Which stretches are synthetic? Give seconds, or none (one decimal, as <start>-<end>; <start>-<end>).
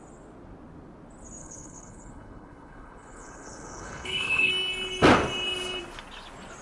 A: 1.4-4.5